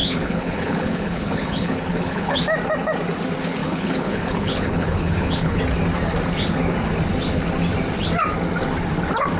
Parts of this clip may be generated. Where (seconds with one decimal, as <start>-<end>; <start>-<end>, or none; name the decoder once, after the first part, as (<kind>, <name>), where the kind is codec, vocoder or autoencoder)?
0.0-2.4 (codec, HILCodec); 3.6-5.6